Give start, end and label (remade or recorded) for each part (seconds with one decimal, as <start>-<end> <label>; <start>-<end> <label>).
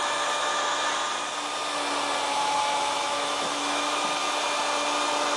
0.0-0.5 remade; 0.5-2.3 recorded; 2.3-4.2 remade; 4.2-5.4 recorded